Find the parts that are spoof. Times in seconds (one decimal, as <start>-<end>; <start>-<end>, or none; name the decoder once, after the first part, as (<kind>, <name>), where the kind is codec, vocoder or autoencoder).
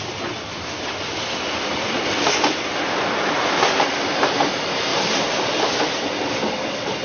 4.9-6.2 (vocoder, BigVGAN v2)